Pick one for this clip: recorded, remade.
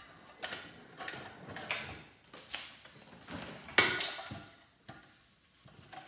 recorded